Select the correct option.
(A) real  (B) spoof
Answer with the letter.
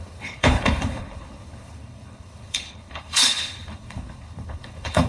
B